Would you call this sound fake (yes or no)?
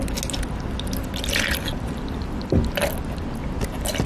no